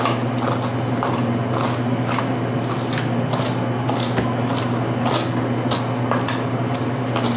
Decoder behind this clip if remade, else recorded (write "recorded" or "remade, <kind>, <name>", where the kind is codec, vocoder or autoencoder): recorded